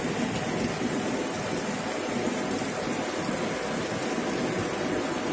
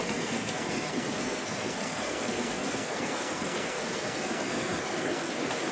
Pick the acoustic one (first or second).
first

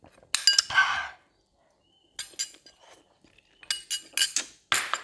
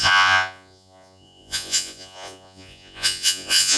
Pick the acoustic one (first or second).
first